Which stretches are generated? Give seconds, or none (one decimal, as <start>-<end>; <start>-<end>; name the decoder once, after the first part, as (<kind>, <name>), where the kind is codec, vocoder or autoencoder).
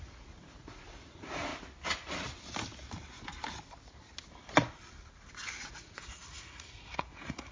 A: 0.0-1.5 (vocoder, Vocos); 5.7-7.5